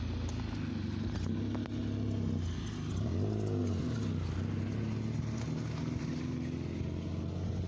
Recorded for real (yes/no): yes